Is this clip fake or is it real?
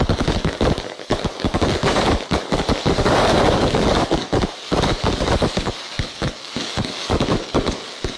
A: fake